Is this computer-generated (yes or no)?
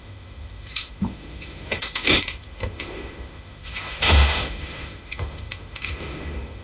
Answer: yes